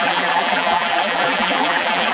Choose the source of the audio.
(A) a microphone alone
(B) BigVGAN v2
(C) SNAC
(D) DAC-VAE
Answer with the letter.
B